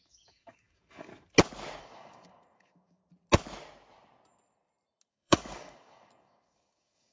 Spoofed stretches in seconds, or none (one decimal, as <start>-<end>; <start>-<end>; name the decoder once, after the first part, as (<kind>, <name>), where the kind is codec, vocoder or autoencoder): 0.0-1.1 (codec, DAC); 1.8-3.0; 5.1-7.1